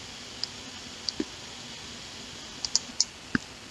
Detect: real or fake real